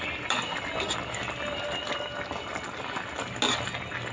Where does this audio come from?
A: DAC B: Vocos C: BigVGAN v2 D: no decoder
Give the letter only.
D